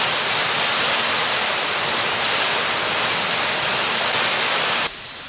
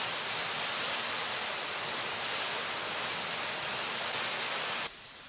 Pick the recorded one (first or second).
second